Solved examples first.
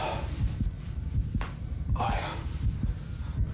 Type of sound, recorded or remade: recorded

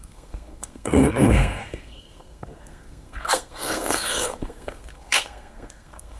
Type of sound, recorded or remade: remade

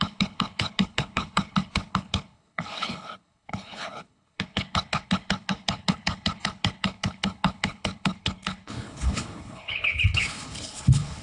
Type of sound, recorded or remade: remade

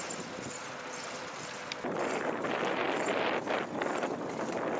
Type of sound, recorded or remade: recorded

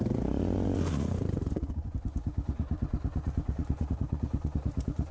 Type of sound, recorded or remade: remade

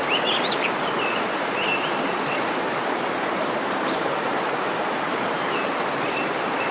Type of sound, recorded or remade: remade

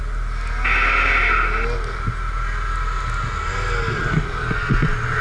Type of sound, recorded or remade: recorded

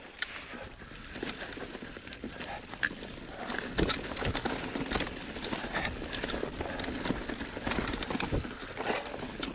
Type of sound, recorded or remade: recorded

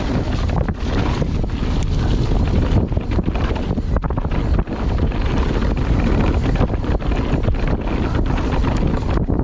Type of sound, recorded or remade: recorded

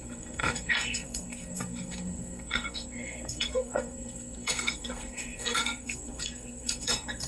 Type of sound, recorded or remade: remade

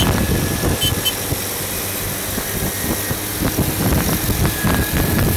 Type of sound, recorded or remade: recorded